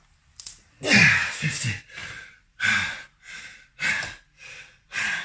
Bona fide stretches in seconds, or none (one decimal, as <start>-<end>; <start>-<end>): 0.0-5.2